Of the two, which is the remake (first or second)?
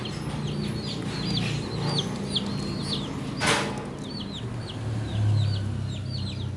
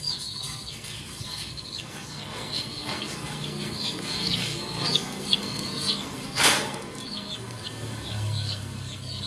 second